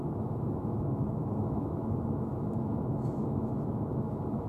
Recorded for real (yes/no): no